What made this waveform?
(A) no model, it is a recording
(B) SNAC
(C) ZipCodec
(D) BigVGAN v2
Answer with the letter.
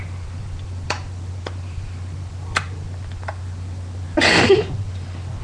D